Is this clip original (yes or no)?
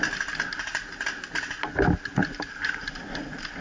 yes